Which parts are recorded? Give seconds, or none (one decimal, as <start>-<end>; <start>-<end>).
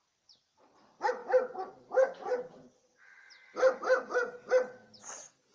0.0-5.5